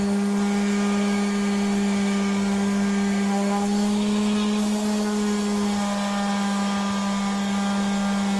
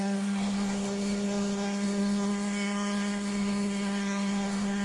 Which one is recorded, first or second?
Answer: first